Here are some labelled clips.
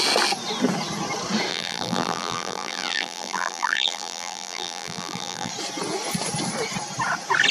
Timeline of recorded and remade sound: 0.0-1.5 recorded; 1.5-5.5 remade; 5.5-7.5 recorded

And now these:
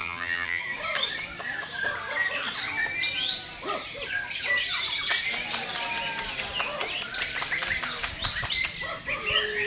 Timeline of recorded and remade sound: 0.0-0.6 remade; 0.6-9.7 recorded

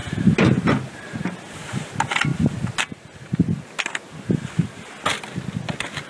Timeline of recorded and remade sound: 0.0-6.1 recorded

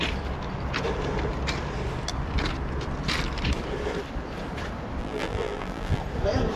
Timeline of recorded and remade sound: 0.0-5.0 recorded; 5.0-6.0 remade; 6.0-6.6 recorded

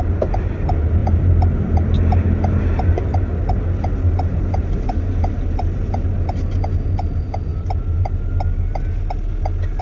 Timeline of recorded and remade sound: 0.0-1.0 recorded; 1.0-2.2 remade; 2.2-9.8 recorded